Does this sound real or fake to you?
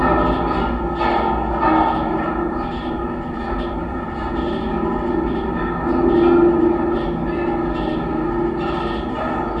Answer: real